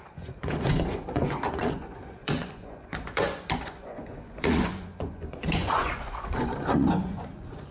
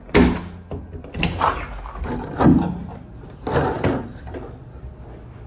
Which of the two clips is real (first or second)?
second